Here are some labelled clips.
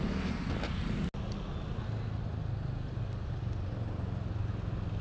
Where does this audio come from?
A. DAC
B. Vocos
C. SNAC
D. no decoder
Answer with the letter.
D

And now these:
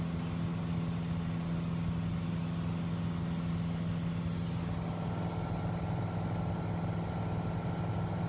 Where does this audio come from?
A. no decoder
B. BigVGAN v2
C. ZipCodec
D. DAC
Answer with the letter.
A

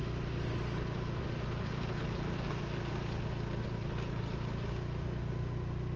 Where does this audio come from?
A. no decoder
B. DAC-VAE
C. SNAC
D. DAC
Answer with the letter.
A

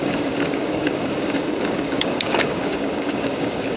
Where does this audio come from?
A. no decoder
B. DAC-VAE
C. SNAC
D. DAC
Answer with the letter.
D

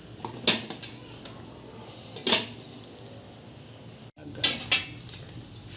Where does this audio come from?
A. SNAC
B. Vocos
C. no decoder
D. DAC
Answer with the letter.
C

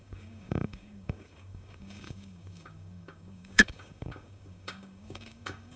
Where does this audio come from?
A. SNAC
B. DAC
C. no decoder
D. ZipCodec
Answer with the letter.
B